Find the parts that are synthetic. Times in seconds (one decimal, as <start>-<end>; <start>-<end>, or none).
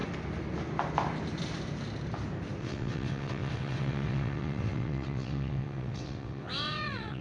2.6-7.2